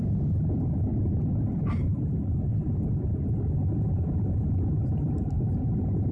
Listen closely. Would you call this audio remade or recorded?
recorded